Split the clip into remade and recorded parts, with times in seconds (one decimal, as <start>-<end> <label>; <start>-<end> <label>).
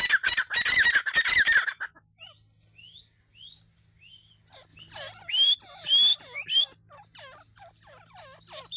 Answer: 0.0-8.8 recorded